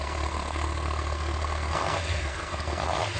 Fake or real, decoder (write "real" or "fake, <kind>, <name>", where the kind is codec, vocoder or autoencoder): fake, codec, SNAC